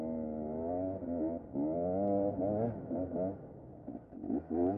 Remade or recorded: recorded